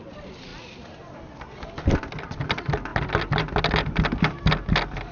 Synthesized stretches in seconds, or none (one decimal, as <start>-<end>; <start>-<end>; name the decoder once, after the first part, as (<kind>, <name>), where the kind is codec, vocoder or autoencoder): none